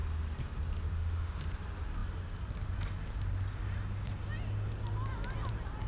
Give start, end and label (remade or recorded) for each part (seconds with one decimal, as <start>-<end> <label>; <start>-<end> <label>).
0.0-0.9 recorded; 0.9-1.4 remade; 1.4-5.9 recorded